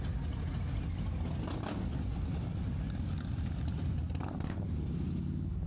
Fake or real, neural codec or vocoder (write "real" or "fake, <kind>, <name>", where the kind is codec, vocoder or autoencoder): real